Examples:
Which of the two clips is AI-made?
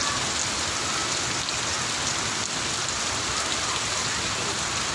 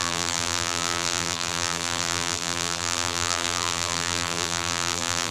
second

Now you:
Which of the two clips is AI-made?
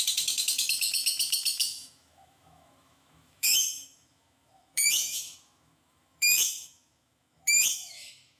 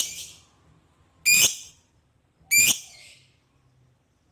first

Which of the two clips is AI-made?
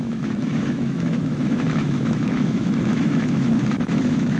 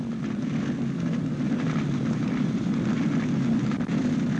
first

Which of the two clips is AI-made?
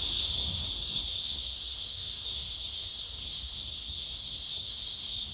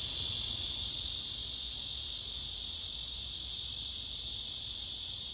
first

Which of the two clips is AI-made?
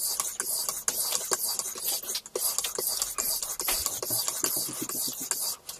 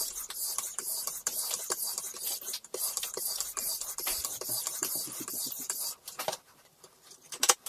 second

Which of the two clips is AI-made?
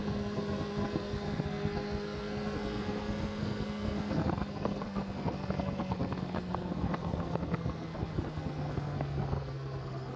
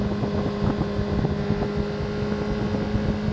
first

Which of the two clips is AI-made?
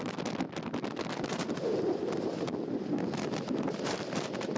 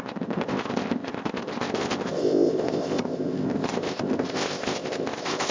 second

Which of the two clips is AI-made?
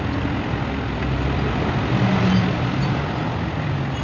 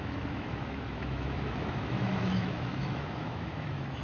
second